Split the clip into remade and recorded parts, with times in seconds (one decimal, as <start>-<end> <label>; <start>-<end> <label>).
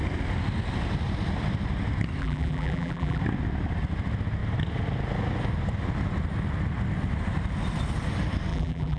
0.0-2.2 recorded; 2.2-3.2 remade; 3.2-8.5 recorded; 8.5-9.0 remade